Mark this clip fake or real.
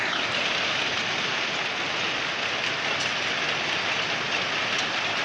real